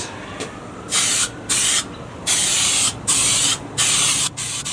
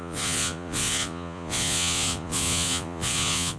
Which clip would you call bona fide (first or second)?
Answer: first